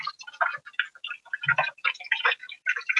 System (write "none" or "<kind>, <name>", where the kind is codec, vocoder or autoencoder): vocoder, BigVGAN v2